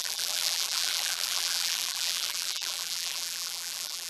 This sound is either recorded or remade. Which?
remade